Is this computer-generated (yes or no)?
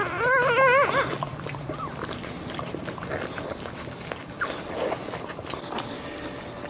no